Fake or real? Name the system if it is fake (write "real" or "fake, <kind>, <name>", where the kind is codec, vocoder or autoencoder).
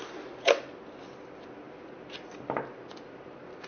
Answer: real